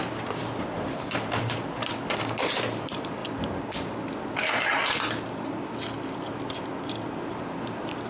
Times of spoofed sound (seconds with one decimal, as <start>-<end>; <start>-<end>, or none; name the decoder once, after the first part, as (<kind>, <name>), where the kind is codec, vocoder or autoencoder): 0.0-1.8 (vocoder, BigVGAN v2); 2.4-3.2; 7.0-8.1